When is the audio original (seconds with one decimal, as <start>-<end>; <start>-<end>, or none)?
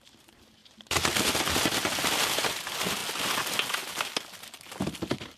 0.0-5.4